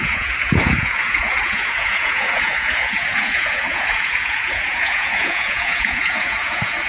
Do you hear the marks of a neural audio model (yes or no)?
yes